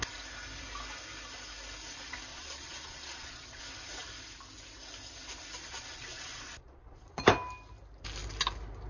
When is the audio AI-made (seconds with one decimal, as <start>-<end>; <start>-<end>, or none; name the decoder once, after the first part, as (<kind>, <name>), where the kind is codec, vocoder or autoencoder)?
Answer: 2.3-3.6 (vocoder, Vocos); 5.6-7.2